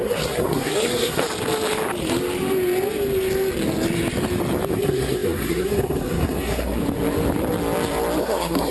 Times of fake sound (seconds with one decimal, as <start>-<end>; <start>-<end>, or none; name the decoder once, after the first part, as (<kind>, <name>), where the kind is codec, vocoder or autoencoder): 0.0-1.2 (codec, SNAC); 4.7-6.8; 8.2-8.7